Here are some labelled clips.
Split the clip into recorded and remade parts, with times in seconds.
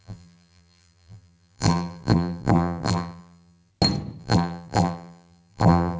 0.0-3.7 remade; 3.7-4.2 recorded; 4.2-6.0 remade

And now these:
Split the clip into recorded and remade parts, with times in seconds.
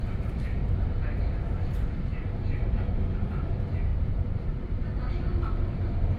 0.0-0.6 remade; 0.6-2.1 recorded; 2.1-3.0 remade; 3.0-3.9 recorded; 3.9-5.0 remade; 5.0-6.2 recorded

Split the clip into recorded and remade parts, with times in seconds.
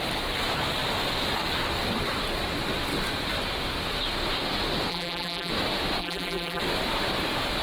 0.0-4.9 recorded; 4.9-5.5 remade; 5.5-6.0 recorded; 6.0-6.6 remade; 6.6-7.6 recorded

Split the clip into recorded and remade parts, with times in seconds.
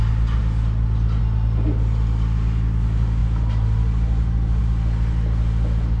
0.0-0.4 recorded; 0.4-1.2 remade; 1.2-3.2 recorded; 3.2-4.6 remade; 4.6-6.0 recorded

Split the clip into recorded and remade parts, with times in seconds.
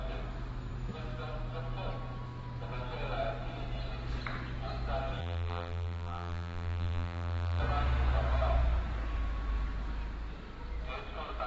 0.0-5.2 recorded; 5.2-7.6 remade; 7.6-11.5 recorded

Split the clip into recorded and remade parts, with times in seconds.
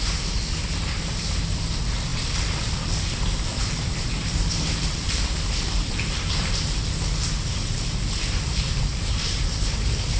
0.0-2.1 recorded; 2.1-6.8 remade; 6.8-8.9 recorded; 8.9-10.2 remade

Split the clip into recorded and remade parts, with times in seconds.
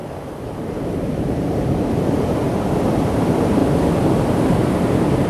0.0-1.3 recorded; 1.3-2.4 remade; 2.4-2.9 recorded; 2.9-3.6 remade; 3.6-4.2 recorded; 4.2-5.3 remade